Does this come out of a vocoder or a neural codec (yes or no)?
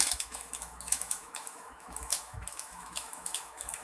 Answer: yes